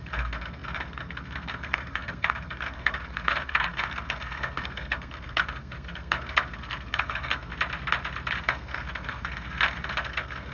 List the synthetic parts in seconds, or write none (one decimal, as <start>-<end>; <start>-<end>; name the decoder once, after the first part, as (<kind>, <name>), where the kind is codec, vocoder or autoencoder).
0.0-7.5 (codec, SNAC); 8.4-10.5